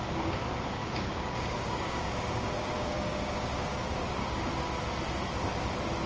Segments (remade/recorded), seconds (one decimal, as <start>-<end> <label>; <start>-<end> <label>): 0.0-0.8 recorded; 0.8-4.5 remade; 4.5-6.1 recorded